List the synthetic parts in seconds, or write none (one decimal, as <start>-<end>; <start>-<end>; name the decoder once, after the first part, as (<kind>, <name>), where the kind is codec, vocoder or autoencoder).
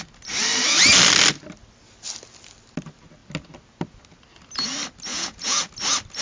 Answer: 5.1-5.7 (vocoder, Vocos)